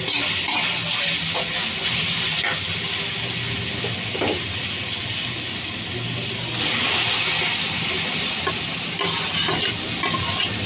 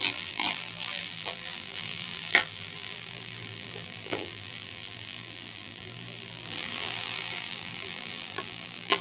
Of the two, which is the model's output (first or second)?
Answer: second